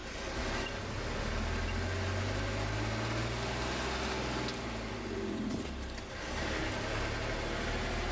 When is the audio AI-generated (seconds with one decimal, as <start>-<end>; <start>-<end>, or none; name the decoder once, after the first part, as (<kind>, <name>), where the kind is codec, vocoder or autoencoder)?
none